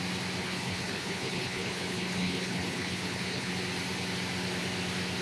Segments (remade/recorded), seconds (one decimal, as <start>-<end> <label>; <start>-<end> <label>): 0.0-0.4 recorded; 0.4-3.5 remade; 3.5-5.2 recorded